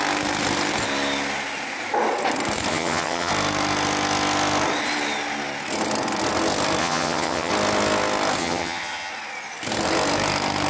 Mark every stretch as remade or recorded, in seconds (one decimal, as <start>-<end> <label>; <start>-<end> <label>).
0.0-2.7 recorded; 2.7-3.3 remade; 3.3-6.8 recorded; 6.8-7.5 remade; 7.5-8.4 recorded; 8.4-9.1 remade; 9.1-10.7 recorded